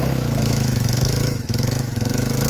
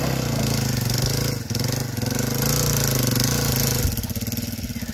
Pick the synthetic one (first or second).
first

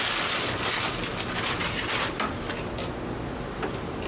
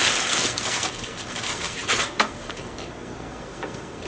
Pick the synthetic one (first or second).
second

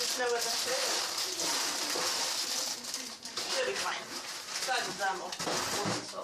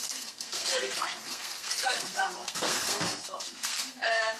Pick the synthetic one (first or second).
second